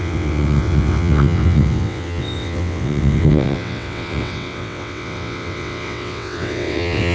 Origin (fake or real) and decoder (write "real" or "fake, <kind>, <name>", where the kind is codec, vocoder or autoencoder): fake, vocoder, WaveNeXt